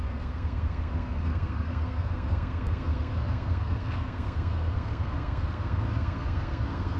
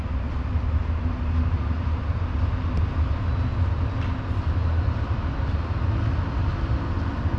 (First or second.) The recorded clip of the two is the second